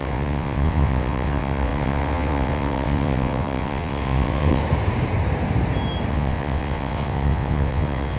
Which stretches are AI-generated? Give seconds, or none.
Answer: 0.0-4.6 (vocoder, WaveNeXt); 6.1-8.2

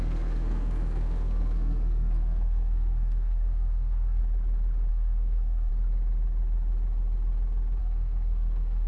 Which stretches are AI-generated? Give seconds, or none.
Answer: 0.0-4.2 (codec, SNAC); 4.9-5.7; 7.8-8.9